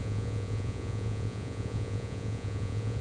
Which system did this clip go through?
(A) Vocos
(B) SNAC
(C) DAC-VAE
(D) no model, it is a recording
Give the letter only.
A